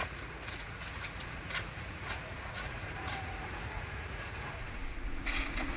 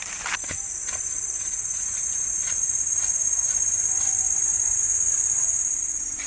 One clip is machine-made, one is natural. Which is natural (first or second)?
second